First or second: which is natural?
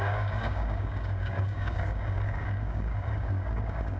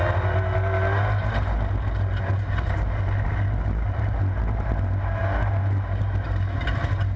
second